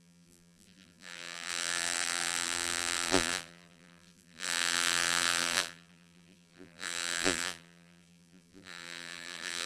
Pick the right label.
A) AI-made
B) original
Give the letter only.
A